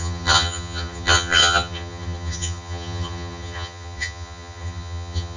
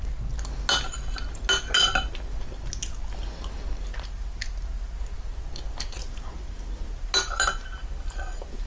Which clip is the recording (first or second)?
second